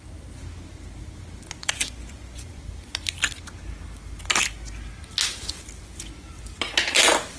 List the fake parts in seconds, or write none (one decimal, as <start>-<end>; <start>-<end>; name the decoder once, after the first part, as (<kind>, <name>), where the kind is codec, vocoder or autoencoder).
1.6-2.6 (vocoder, Vocos)